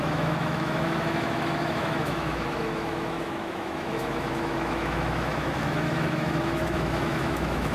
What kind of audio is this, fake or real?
fake